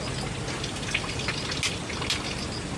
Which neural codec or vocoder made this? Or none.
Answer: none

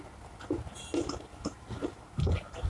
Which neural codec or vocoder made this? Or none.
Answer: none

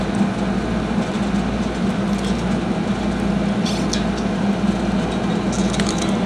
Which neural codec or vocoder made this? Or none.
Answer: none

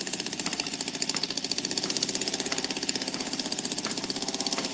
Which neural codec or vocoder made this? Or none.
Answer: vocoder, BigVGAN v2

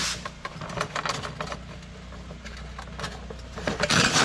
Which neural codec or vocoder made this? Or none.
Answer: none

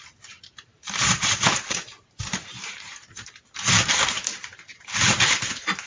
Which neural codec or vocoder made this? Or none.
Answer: vocoder, BigVGAN v2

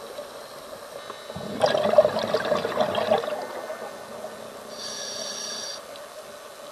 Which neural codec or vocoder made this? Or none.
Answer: none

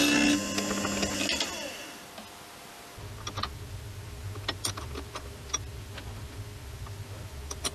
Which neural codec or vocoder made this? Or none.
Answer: none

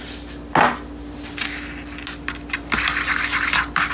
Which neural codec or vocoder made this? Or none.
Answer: none